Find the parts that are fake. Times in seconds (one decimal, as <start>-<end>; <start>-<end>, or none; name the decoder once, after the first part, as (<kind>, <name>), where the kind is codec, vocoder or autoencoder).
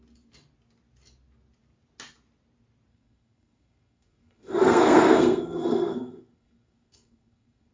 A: 2.9-7.7 (codec, SNAC)